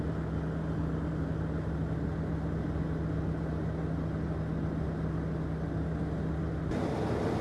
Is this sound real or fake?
real